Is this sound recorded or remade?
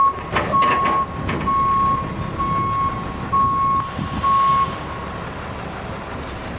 recorded